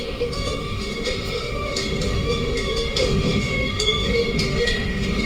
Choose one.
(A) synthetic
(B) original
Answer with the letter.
A